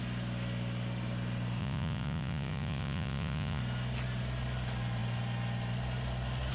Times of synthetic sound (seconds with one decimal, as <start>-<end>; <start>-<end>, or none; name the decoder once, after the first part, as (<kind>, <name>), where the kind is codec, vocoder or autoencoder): 1.6-3.6 (vocoder, Vocos)